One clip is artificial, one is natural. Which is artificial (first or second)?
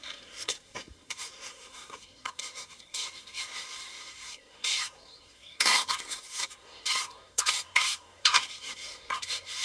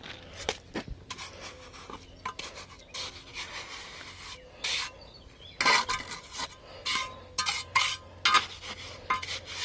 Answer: first